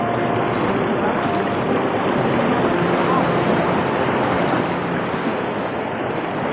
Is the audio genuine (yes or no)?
yes